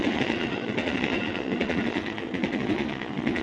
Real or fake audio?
fake